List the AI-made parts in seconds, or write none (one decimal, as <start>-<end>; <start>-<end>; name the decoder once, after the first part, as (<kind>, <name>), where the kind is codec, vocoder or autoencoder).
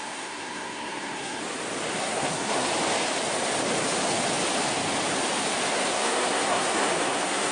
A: 0.0-1.4 (codec, SNAC); 1.9-2.7; 5.9-7.5